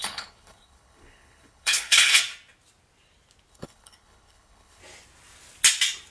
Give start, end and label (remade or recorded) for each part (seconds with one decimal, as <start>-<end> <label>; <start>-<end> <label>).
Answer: 0.0-2.2 remade; 2.2-3.5 recorded; 3.5-4.8 remade; 4.8-6.1 recorded